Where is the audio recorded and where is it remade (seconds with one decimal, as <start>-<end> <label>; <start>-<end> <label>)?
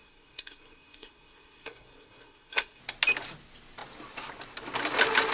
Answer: 0.0-2.8 remade; 2.8-5.3 recorded